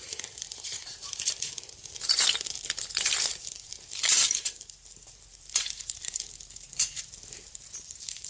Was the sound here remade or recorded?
remade